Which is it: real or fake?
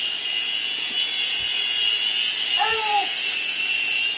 fake